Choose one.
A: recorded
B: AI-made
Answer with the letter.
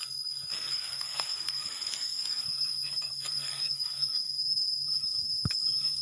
B